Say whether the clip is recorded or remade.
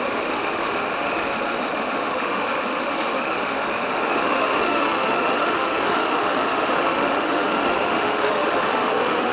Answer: remade